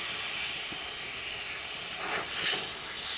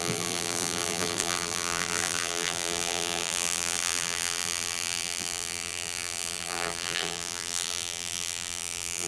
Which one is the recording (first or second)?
first